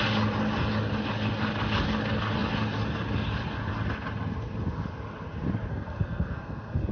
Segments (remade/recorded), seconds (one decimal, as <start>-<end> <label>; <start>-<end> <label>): 0.0-5.7 recorded; 5.7-6.9 remade